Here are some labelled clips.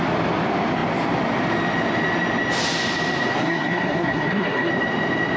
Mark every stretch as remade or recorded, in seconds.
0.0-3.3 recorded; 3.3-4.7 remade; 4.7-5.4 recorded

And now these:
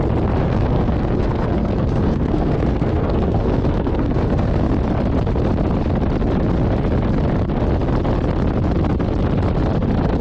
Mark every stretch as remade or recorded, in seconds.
0.0-0.4 recorded; 0.4-4.7 remade; 4.7-10.2 recorded

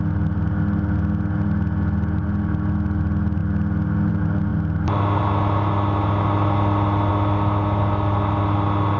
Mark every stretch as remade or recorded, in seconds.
0.0-9.0 recorded